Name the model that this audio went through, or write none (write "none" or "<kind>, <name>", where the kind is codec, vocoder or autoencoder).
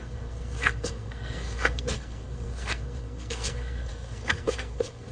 codec, SNAC